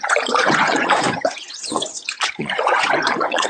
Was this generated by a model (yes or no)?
yes